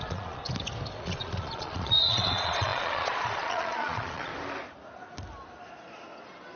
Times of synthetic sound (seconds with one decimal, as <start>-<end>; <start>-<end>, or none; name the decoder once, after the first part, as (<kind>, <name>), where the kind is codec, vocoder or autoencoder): 0.0-0.4 (vocoder, Vocos); 1.0-4.3